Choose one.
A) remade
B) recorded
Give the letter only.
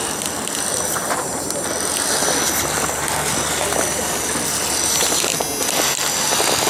B